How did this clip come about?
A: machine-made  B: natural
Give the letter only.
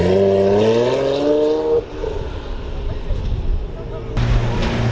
B